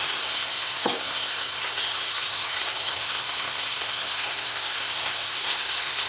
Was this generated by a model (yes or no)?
yes